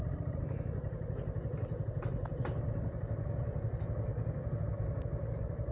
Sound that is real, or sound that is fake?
real